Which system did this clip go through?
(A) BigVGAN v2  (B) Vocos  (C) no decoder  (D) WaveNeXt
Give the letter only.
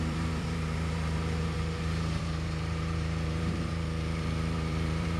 A